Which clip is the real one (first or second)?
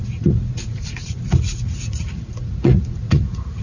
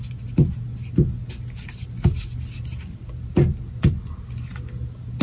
second